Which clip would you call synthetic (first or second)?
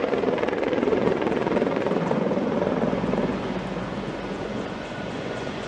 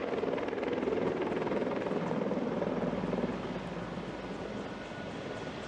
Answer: first